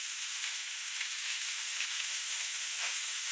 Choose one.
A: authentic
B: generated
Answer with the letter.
B